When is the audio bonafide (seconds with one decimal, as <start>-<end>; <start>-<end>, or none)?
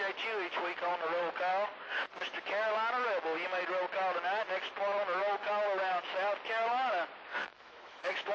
0.0-7.4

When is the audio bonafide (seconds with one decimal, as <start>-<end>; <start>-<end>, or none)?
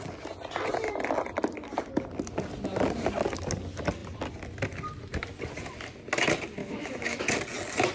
0.0-6.6; 7.2-7.9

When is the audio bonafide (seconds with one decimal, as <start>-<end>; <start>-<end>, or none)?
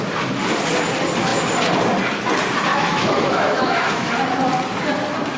0.0-2.7; 4.1-5.4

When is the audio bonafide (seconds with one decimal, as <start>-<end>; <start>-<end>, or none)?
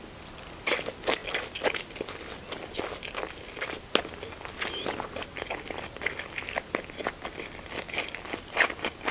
0.0-9.1